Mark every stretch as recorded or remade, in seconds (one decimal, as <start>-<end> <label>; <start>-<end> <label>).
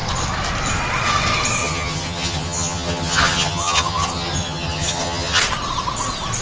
0.0-1.6 recorded; 1.6-5.4 remade; 5.4-6.4 recorded